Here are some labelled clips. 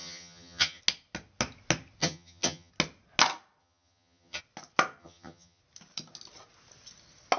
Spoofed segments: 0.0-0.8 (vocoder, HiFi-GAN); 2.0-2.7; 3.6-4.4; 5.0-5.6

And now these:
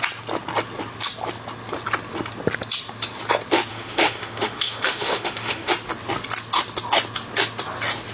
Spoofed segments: 3.7-5.7 (autoencoder, DAC-VAE)

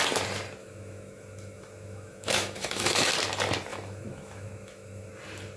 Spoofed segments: 0.6-3.1 (autoencoder, DAC-VAE); 3.7-5.1

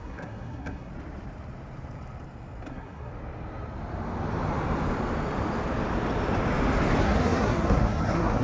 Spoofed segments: 0.0-0.9 (codec, SNAC); 2.7-3.1; 7.0-8.4

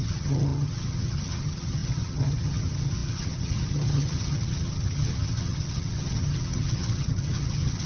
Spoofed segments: 0.0-7.9 (vocoder, HiFi-GAN)

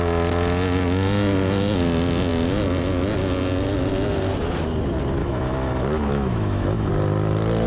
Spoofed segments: 5.2-6.9 (autoencoder, DAC-VAE)

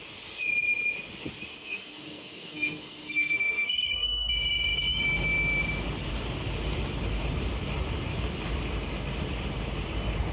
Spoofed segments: 1.5-4.3 (codec, SNAC)

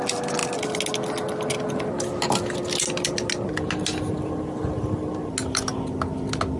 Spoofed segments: none